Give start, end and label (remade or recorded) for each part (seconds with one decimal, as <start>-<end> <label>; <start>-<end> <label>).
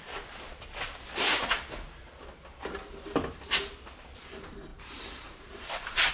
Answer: 0.0-4.7 recorded; 4.7-6.1 remade